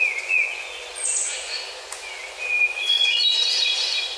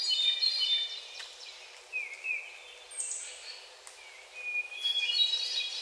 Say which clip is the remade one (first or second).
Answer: first